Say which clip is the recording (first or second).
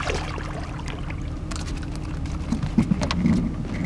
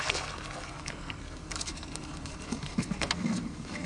first